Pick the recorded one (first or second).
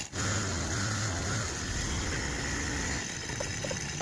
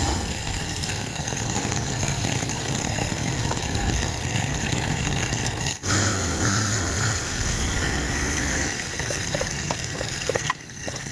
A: first